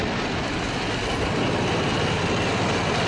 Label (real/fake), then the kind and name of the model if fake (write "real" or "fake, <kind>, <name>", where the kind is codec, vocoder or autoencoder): real